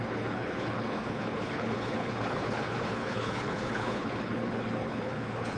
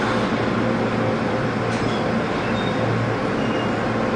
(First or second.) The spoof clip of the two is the first